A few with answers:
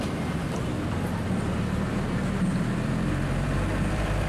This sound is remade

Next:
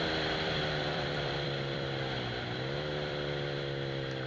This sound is remade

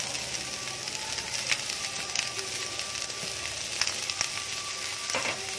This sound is recorded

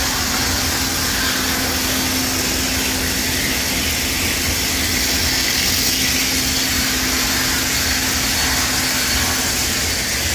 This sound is recorded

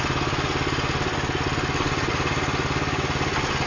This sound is recorded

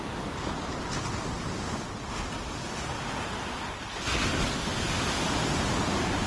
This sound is recorded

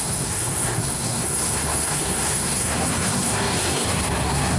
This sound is remade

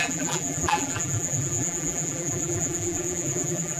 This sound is remade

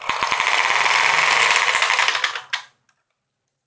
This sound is recorded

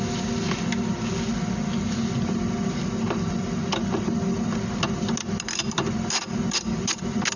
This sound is recorded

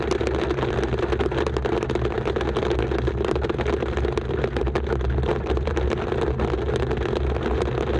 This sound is recorded